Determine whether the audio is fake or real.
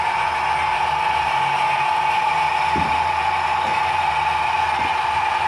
real